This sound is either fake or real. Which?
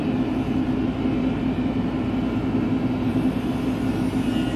real